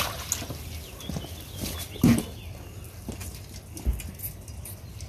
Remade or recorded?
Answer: recorded